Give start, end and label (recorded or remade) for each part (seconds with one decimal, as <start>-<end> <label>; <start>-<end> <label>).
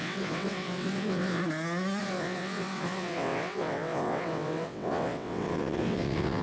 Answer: 0.0-1.4 remade; 1.4-2.0 recorded; 2.0-6.4 remade